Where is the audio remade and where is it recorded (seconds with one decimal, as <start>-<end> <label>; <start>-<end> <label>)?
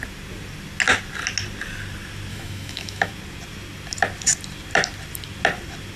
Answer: 0.0-2.3 recorded; 2.3-3.1 remade; 3.1-6.0 recorded